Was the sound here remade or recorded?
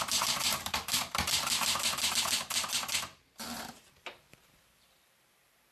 remade